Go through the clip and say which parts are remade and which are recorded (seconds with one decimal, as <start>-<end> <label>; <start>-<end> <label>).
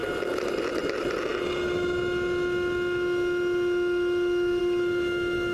0.0-5.5 recorded